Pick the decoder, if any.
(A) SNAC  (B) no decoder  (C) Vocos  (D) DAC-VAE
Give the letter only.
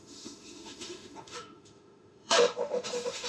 D